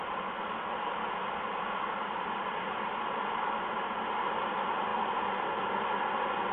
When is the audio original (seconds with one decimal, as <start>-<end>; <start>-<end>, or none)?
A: 0.0-6.5